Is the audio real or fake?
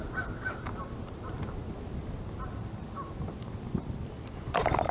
fake